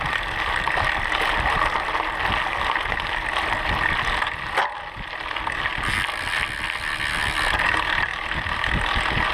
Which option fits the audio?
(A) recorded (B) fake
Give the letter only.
A